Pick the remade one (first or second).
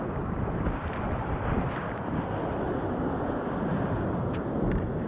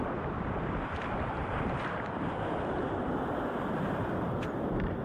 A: second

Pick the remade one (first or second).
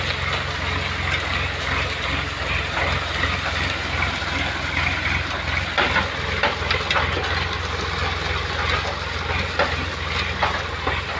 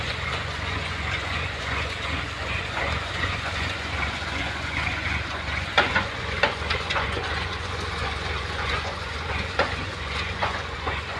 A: second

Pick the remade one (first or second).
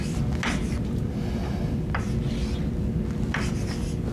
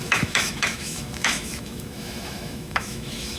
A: second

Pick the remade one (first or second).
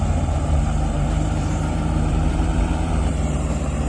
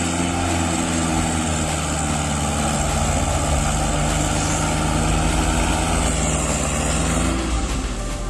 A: first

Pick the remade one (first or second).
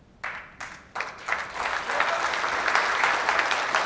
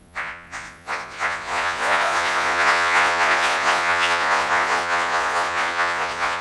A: second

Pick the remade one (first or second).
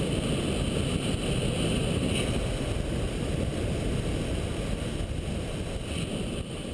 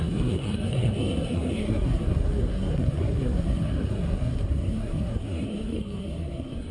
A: second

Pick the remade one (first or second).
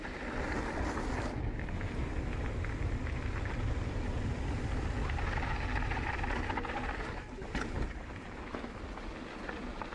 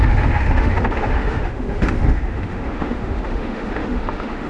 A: second